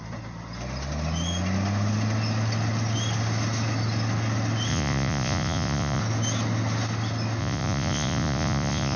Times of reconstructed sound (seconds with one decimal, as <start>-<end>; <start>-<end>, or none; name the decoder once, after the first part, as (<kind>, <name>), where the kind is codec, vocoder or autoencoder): 4.7-6.0 (vocoder, Vocos); 7.4-9.0